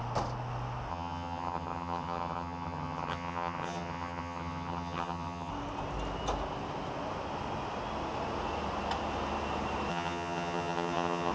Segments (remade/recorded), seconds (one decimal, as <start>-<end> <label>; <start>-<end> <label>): 0.0-0.9 recorded; 0.9-5.5 remade; 5.5-9.9 recorded; 9.9-11.3 remade